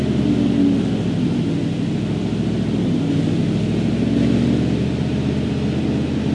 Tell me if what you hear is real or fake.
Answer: real